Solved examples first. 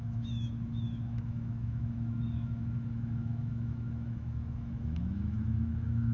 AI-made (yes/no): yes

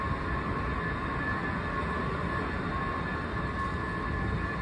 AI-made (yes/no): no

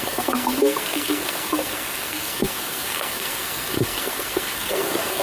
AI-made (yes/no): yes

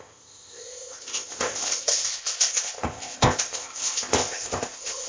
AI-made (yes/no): yes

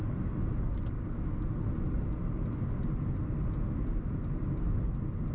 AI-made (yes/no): no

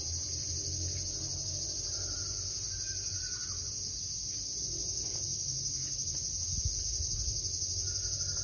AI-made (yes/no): no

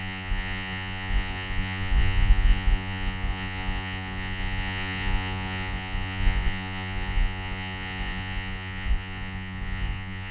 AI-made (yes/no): yes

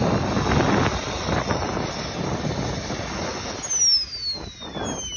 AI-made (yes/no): no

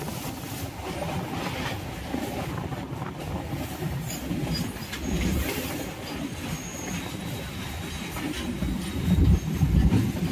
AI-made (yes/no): no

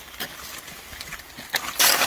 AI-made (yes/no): no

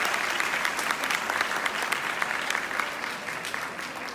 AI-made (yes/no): no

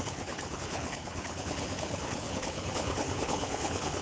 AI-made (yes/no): yes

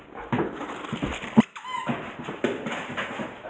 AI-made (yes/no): no